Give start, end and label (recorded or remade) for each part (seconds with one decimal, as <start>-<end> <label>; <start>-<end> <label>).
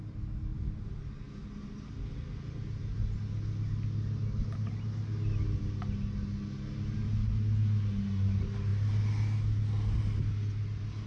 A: 0.0-11.1 recorded